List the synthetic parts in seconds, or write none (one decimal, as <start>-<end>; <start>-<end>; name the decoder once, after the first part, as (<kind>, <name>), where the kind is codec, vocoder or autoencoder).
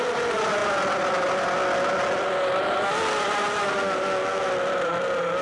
none